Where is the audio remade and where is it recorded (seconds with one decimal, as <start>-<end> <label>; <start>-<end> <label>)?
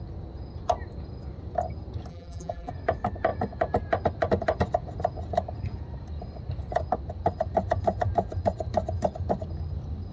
0.0-2.1 recorded; 2.1-2.7 remade; 2.7-10.1 recorded